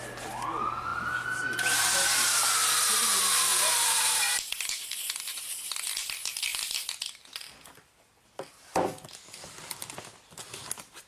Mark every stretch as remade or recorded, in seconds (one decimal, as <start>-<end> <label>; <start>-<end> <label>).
0.0-11.1 recorded